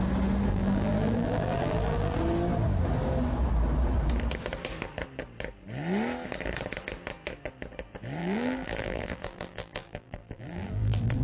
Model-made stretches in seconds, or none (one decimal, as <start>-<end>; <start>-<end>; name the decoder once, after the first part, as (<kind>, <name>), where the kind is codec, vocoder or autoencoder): 0.5-2.2 (vocoder, BigVGAN v2); 8.2-11.2